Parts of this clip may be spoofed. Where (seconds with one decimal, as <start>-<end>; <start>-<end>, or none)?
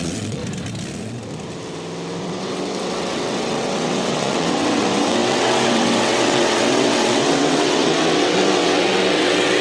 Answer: 0.0-0.4; 2.2-9.6